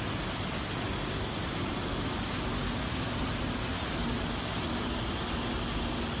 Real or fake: real